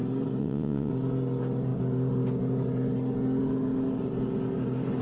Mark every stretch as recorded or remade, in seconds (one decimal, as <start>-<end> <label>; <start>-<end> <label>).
0.0-0.4 recorded; 0.4-0.9 remade; 0.9-5.0 recorded